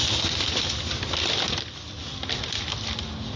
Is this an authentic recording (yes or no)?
yes